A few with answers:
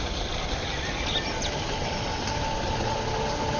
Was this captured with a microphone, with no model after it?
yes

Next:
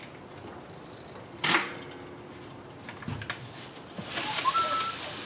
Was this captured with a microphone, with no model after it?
yes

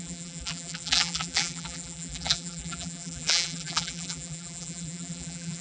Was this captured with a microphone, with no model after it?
no